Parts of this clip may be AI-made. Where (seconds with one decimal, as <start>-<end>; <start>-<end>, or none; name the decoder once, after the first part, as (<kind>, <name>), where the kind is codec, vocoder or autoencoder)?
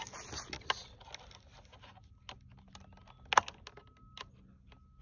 none